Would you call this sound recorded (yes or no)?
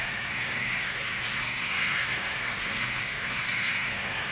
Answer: no